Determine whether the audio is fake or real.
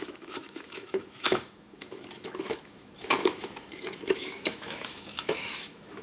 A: fake